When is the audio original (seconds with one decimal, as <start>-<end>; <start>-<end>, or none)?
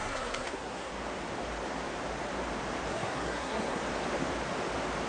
0.9-2.9; 3.8-5.1